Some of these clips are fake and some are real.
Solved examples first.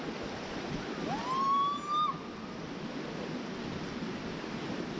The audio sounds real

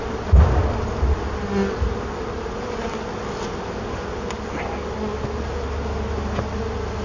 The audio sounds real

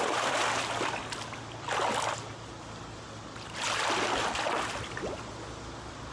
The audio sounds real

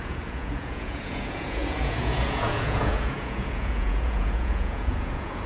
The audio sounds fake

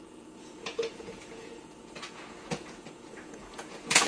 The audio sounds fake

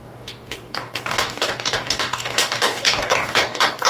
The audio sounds fake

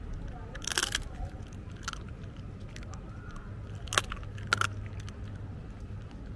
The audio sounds real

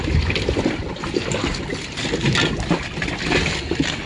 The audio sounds real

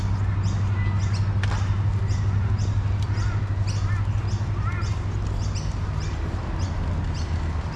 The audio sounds real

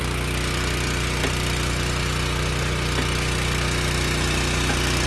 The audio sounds real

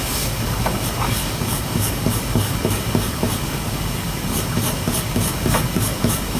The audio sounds fake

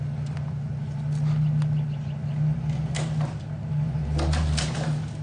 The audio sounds real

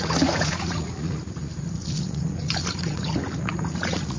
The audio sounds fake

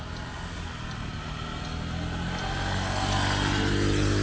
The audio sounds real